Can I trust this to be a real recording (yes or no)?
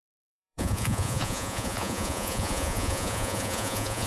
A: no